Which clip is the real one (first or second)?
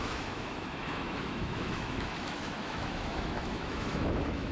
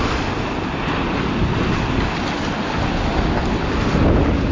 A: second